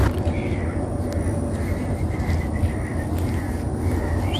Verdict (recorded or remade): recorded